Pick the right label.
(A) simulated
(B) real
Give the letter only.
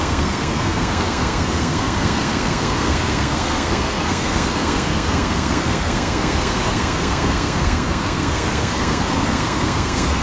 A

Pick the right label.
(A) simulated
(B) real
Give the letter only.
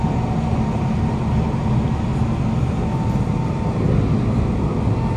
B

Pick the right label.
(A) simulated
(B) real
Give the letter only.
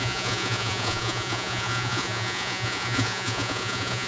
A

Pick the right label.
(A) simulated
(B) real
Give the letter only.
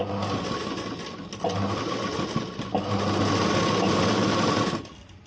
B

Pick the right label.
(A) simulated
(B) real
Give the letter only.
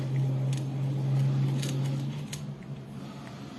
B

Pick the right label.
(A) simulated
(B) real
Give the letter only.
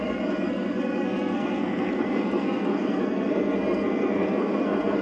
A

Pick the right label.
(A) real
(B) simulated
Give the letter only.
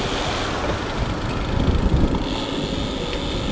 A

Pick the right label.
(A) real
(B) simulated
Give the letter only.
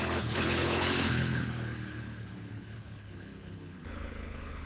B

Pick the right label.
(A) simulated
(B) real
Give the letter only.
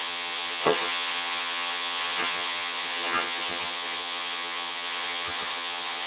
A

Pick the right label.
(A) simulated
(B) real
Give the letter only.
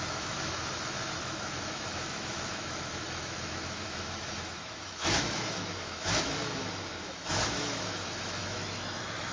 A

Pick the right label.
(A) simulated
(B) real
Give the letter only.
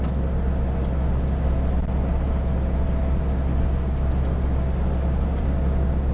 B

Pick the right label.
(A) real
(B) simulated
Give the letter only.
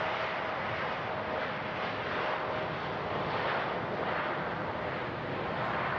A